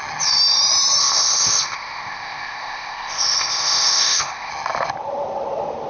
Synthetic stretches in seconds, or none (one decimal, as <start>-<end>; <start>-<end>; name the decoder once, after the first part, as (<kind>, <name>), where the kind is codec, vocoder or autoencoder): 1.0-4.5 (codec, ZipCodec)